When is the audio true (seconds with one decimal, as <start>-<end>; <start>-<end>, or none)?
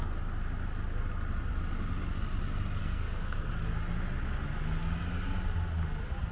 0.0-2.8; 3.5-6.3